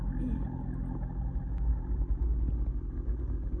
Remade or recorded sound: recorded